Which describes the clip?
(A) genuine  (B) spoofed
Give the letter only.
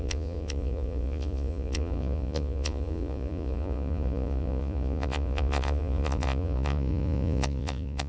B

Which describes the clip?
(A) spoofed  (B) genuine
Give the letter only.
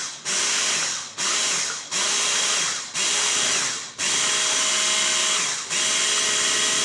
B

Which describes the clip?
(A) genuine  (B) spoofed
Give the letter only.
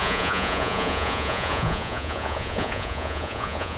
B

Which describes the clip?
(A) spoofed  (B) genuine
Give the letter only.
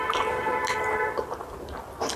B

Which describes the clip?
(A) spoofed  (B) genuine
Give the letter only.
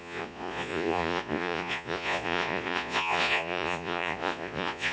A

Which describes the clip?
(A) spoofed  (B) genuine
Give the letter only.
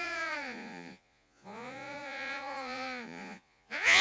A